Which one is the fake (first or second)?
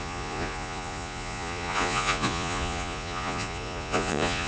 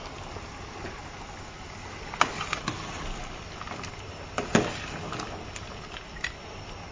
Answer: first